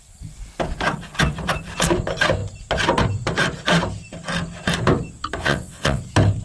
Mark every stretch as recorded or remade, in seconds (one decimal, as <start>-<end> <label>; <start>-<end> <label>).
0.0-5.4 recorded; 5.4-6.0 remade; 6.0-6.4 recorded